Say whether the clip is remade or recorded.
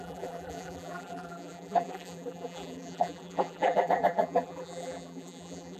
remade